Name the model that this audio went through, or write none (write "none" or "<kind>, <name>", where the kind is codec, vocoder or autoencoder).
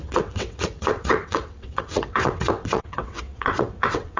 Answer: vocoder, WaveNeXt